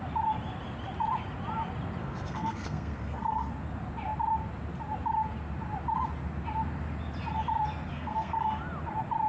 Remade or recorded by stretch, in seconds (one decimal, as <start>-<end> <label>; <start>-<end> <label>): 0.0-2.0 recorded; 2.0-3.5 remade; 3.5-7.9 recorded; 7.9-8.6 remade; 8.6-9.3 recorded